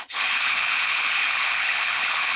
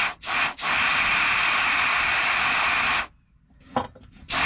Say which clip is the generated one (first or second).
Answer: first